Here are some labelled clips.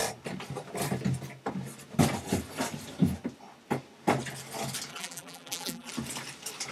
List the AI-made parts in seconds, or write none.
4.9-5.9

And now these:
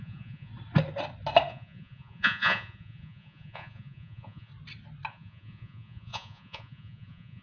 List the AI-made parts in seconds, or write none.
0.0-0.5; 1.5-4.5; 5.1-7.4

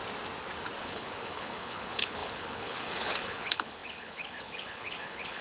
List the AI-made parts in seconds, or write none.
0.8-5.4

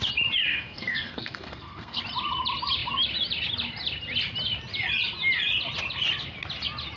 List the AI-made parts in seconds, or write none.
0.5-2.0

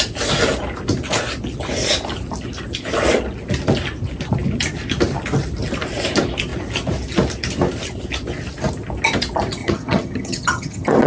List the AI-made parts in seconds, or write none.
9.6-11.1

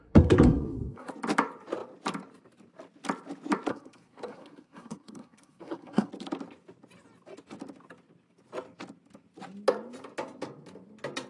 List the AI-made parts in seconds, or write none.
0.0-1.1; 3.7-6.1